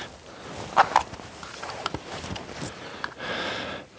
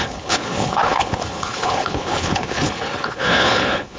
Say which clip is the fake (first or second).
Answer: second